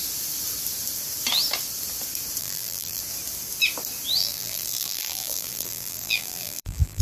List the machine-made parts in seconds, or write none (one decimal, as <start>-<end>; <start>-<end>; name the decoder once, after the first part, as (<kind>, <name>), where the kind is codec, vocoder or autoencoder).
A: 2.4-3.0 (vocoder, BigVGAN v2); 4.2-7.0